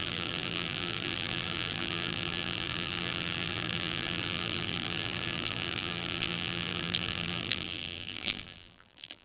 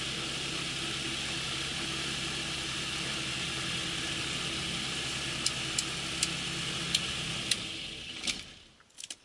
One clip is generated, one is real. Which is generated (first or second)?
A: first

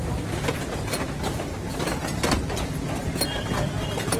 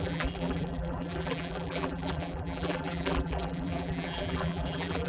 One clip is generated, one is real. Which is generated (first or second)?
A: second